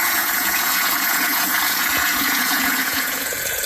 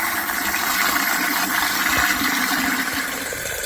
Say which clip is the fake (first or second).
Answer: first